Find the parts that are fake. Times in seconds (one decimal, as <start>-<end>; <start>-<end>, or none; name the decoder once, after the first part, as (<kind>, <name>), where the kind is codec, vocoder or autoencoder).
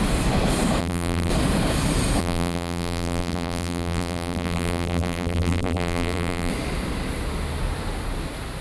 0.8-1.3 (vocoder, BigVGAN v2); 2.2-6.5